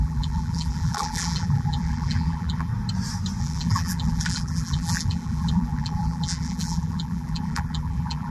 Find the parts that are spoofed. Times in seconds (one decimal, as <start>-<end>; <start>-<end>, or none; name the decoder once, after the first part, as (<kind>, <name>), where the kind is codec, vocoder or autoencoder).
0.0-2.7 (vocoder, BigVGAN v2); 3.4-8.3

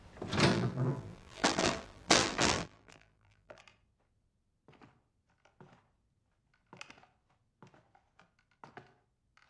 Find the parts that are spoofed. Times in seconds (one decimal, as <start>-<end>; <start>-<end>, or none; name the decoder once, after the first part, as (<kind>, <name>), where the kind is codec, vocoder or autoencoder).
0.5-3.6 (vocoder, BigVGAN v2)

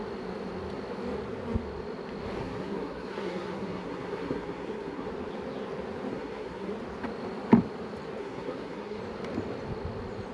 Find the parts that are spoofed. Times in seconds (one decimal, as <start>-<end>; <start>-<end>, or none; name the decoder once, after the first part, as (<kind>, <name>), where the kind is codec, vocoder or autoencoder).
2.4-5.1 (codec, SNAC); 6.1-6.7; 8.2-9.0

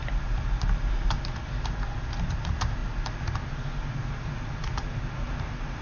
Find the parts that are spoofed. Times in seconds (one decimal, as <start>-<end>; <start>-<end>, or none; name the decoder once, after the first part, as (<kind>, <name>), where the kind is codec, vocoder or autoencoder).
0.0-5.8 (vocoder, BigVGAN v2)

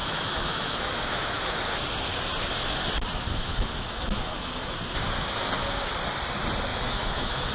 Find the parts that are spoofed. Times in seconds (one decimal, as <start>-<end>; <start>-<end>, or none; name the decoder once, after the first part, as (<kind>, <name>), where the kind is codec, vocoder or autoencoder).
0.0-1.6 (autoencoder, DAC-VAE); 3.4-4.8; 6.7-7.5